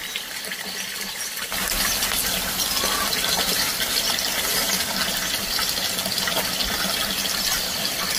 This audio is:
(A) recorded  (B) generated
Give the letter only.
A